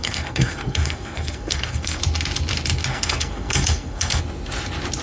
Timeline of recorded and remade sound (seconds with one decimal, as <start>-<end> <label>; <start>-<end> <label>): 0.0-2.0 remade; 2.0-2.9 recorded; 2.9-4.2 remade; 4.2-5.0 recorded